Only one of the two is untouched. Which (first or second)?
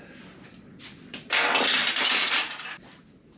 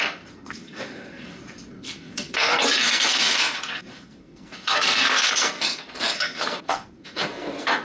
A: first